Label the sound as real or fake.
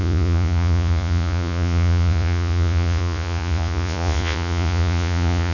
fake